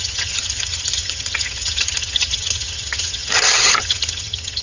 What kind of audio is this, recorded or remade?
remade